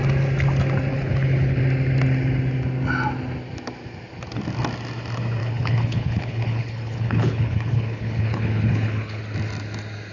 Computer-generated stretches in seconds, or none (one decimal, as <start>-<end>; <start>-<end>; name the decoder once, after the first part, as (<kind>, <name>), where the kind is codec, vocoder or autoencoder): 0.9-1.6 (codec, HILCodec); 5.4-9.2